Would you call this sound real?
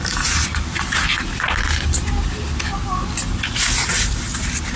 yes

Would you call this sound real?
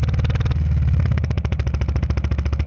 yes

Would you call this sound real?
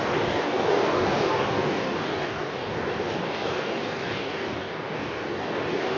no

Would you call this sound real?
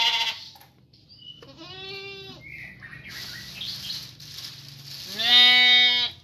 yes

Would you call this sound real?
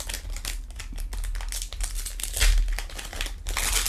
yes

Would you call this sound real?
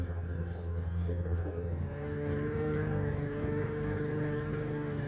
no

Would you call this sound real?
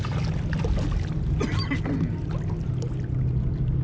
yes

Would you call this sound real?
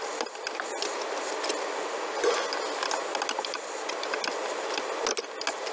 yes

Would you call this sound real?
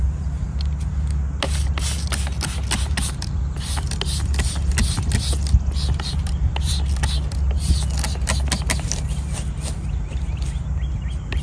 yes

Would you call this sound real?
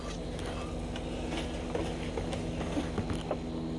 yes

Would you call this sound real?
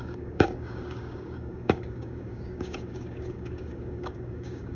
no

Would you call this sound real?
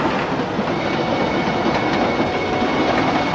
yes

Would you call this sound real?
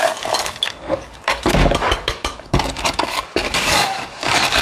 no